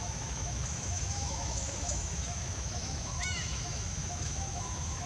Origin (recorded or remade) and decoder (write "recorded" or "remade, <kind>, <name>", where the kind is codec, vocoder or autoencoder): remade, autoencoder, DAC-VAE